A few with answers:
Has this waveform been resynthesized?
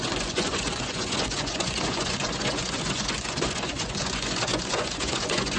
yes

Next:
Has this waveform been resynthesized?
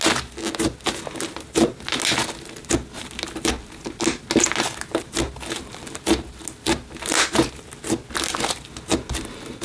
no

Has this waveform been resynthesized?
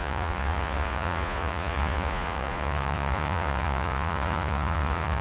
yes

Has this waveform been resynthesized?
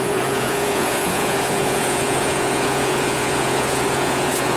yes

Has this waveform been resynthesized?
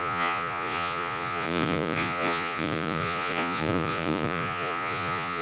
yes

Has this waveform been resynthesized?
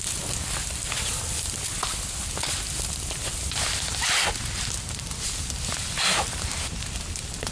no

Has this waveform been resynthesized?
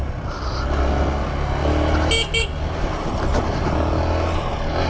no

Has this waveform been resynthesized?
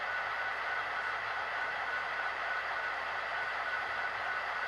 no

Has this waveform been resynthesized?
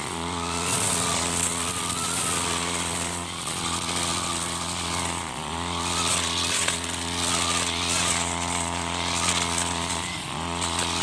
yes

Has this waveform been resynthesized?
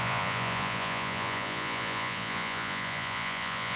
yes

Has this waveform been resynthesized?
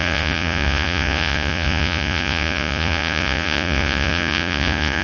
yes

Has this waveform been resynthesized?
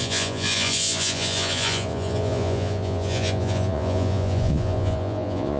yes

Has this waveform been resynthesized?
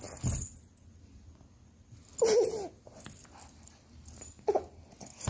no